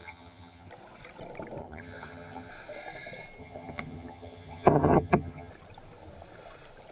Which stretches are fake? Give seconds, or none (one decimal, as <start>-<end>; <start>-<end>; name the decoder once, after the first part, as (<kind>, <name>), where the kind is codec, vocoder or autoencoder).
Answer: 0.0-0.7 (vocoder, HiFi-GAN); 1.6-2.5; 3.4-5.5